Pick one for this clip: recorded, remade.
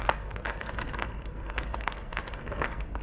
remade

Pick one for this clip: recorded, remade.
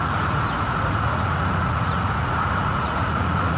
remade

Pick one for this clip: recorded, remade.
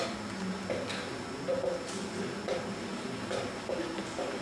recorded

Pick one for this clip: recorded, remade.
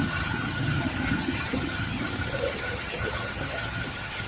remade